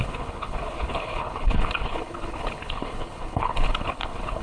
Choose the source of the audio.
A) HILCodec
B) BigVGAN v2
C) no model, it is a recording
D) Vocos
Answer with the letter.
A